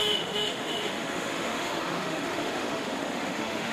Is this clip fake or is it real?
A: fake